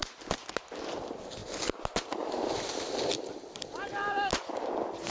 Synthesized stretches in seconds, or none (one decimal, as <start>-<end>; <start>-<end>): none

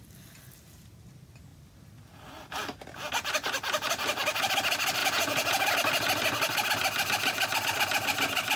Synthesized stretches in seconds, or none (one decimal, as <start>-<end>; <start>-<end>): 5.0-5.7

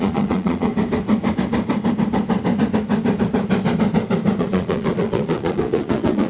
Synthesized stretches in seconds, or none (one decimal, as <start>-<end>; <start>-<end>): 0.0-0.7; 4.4-6.3

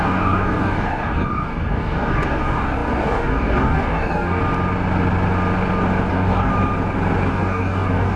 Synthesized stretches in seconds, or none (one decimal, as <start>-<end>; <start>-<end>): 0.0-4.4; 6.1-6.5; 7.3-8.2